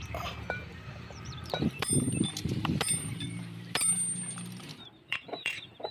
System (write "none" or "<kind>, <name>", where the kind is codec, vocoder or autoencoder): vocoder, BigVGAN v2